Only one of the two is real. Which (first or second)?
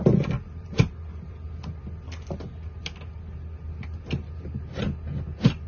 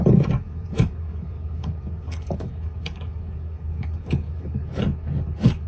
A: first